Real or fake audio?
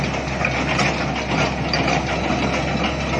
real